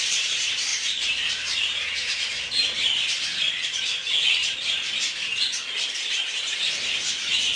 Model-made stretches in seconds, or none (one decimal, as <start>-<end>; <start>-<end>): 0.0-4.0